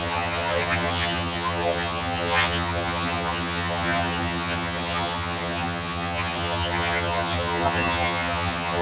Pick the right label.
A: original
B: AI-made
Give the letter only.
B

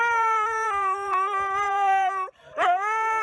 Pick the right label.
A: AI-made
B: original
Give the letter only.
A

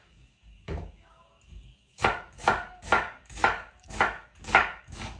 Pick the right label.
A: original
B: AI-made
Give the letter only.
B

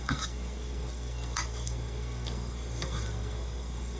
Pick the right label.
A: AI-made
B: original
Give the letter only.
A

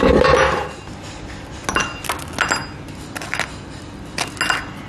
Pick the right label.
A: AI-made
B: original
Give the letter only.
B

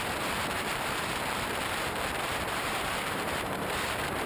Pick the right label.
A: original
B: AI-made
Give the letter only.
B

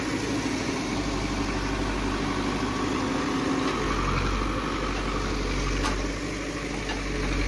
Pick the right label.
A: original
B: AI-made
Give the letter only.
A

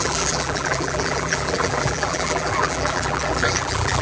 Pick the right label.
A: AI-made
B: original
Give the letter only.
A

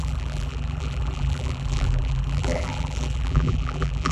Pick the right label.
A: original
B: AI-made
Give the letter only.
B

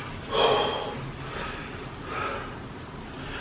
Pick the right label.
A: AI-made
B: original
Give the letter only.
B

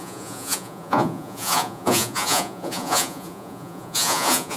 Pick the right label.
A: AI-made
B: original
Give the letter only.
A